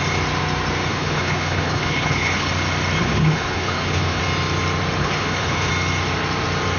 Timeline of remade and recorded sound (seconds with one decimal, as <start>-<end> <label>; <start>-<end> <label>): 0.0-0.9 recorded; 0.9-2.5 remade; 2.5-3.0 recorded; 3.0-4.2 remade; 4.2-5.0 recorded; 5.0-5.7 remade; 5.7-6.8 recorded